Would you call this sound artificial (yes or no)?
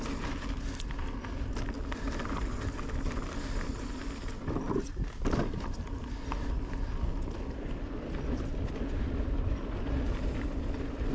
no